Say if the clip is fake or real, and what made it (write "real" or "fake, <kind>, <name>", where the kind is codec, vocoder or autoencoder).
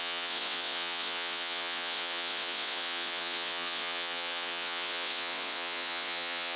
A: fake, vocoder, WaveNeXt